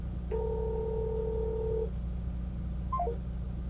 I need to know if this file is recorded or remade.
recorded